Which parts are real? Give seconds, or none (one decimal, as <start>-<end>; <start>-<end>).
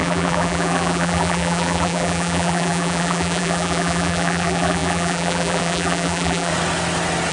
6.5-7.3